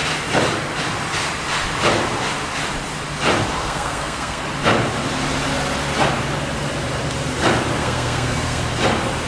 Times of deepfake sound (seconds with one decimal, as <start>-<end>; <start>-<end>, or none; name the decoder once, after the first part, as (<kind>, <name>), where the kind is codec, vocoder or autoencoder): 3.6-4.4 (codec, SNAC); 7.8-8.6